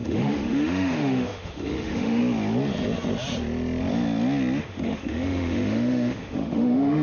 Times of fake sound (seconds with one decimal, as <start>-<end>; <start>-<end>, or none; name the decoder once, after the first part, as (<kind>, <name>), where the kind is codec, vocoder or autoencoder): 0.0-2.2 (autoencoder, DAC-VAE); 4.6-7.0